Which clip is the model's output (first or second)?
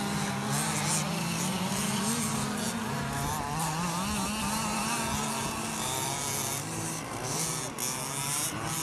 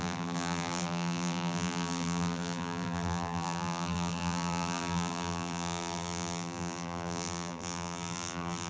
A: second